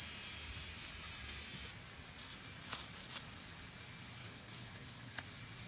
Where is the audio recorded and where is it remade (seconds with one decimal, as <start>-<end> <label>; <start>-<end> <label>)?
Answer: 0.0-4.2 recorded; 4.2-5.2 remade; 5.2-5.7 recorded